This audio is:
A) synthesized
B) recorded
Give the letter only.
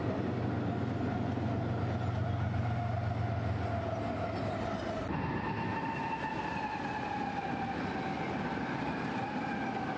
B